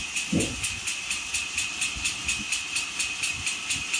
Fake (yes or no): no